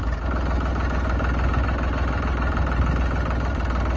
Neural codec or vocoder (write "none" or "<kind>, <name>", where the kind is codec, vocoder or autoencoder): none